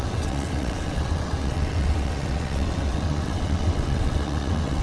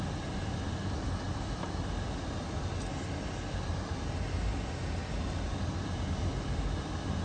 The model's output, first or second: first